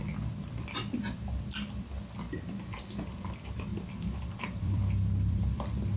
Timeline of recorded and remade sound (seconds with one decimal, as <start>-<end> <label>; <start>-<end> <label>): 0.0-3.7 recorded; 3.7-6.0 remade